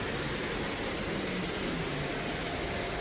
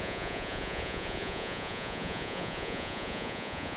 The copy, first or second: second